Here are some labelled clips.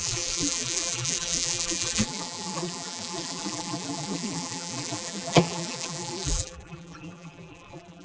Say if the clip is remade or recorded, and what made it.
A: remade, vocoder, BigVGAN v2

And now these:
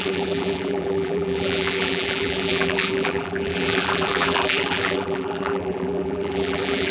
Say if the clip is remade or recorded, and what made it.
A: remade, vocoder, BigVGAN v2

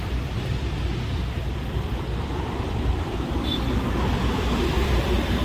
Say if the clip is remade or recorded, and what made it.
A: remade, vocoder, BigVGAN v2